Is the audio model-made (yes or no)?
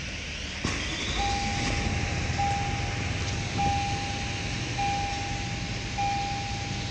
no